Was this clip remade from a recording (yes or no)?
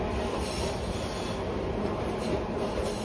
no